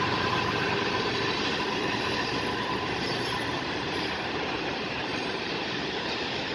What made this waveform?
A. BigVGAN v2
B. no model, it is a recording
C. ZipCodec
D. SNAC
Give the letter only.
A